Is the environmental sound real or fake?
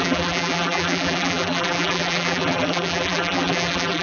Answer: fake